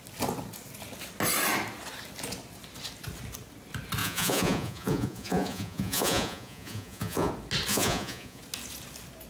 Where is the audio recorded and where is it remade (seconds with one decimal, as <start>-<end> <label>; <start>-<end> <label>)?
0.0-4.0 recorded; 4.0-7.3 remade; 7.3-7.7 recorded; 7.7-8.4 remade; 8.4-9.3 recorded